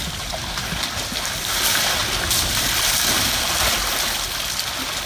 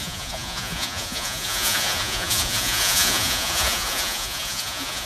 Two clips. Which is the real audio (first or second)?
first